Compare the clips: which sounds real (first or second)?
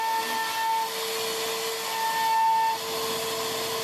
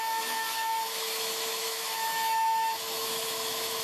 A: first